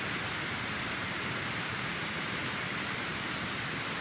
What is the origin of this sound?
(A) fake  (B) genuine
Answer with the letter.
A